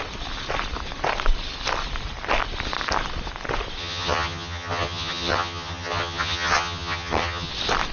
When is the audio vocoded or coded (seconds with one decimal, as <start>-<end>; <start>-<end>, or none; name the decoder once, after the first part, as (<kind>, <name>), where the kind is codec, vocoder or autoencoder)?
3.8-7.5 (vocoder, HiFi-GAN)